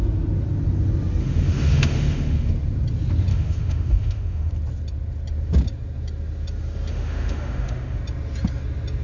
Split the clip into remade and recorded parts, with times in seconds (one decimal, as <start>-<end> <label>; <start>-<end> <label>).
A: 0.0-1.2 recorded; 1.2-2.5 remade; 2.5-3.3 recorded; 3.3-4.5 remade; 4.5-6.9 recorded; 6.9-8.0 remade; 8.0-9.0 recorded